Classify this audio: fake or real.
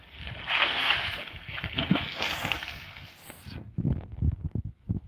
fake